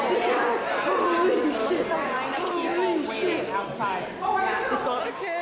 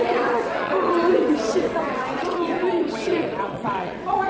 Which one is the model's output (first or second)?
second